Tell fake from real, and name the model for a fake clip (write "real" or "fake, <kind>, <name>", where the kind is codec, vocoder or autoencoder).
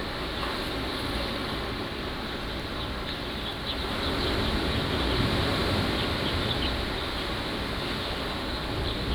real